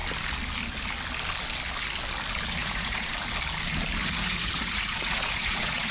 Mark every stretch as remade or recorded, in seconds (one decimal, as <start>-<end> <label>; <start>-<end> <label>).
0.0-2.6 recorded; 2.6-3.1 remade; 3.1-4.0 recorded; 4.0-5.9 remade